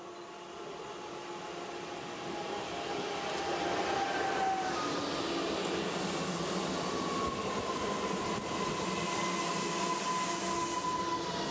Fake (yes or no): no